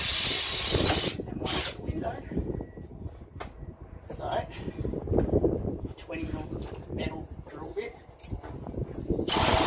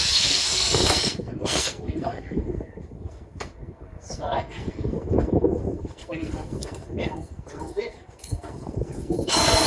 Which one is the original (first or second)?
first